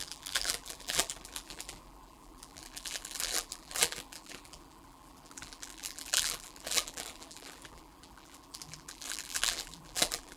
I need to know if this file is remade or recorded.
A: remade